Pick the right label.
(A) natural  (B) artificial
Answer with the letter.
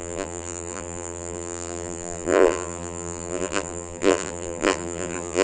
B